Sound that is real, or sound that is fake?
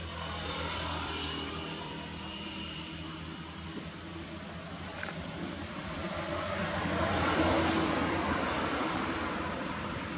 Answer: fake